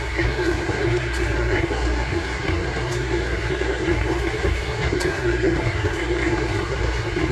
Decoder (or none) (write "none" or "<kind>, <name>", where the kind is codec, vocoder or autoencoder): codec, SNAC